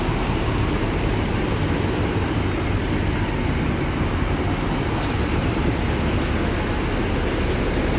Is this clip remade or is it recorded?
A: recorded